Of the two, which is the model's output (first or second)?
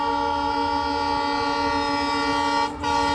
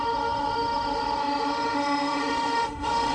second